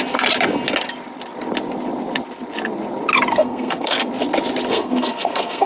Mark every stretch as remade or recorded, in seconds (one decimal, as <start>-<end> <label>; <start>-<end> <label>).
0.0-3.3 recorded; 3.3-4.1 remade; 4.1-4.7 recorded; 4.7-5.7 remade